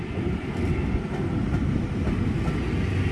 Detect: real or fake real